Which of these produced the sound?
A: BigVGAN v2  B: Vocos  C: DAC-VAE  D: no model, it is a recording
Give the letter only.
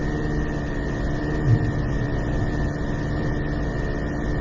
D